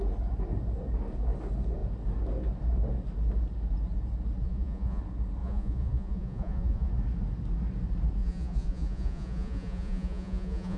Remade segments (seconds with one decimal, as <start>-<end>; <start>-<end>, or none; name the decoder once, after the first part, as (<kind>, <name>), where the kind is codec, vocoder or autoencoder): 4.4-5.0 (vocoder, Vocos); 5.4-6.9; 8.2-10.8